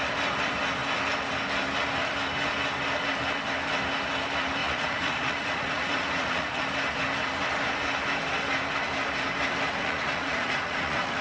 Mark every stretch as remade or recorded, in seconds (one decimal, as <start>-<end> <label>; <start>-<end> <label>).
0.0-4.6 recorded; 4.6-6.6 remade; 6.6-9.8 recorded; 9.8-11.2 remade